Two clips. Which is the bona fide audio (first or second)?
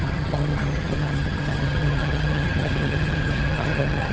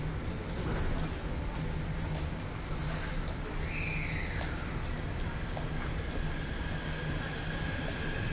second